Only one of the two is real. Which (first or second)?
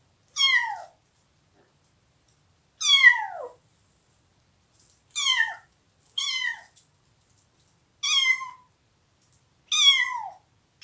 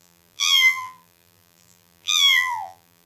first